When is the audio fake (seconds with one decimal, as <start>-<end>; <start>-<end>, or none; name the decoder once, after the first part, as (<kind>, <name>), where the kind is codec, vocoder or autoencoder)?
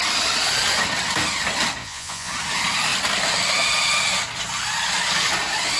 1.8-2.3 (vocoder, Vocos)